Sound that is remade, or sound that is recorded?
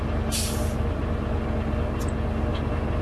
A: recorded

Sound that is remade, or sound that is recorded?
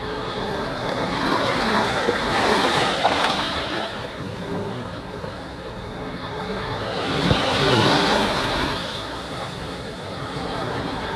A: remade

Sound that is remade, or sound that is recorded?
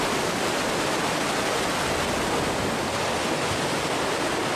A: recorded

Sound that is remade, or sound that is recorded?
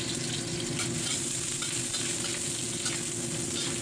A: recorded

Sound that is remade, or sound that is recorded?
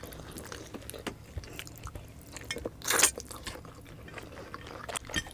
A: recorded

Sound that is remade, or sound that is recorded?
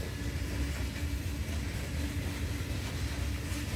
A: recorded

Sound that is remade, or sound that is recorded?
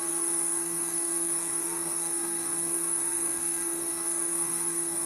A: remade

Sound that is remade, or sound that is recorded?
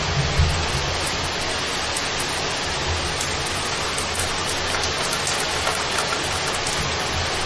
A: recorded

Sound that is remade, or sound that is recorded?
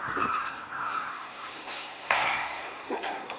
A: remade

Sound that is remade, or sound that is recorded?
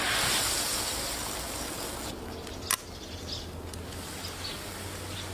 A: recorded